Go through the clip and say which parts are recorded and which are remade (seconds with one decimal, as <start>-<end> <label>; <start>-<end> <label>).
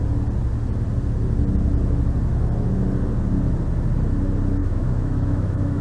0.0-4.6 recorded; 4.6-5.8 remade